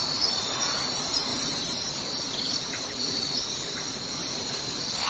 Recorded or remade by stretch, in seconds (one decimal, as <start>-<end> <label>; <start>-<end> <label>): 0.0-1.3 recorded; 1.3-3.2 remade; 3.2-4.2 recorded; 4.2-5.1 remade